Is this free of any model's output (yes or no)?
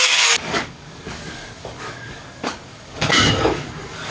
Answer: no